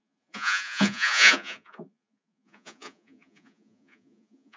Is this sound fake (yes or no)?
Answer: yes